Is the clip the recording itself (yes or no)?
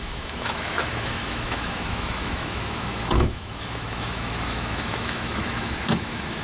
no